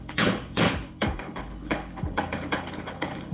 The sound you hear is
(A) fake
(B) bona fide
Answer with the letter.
A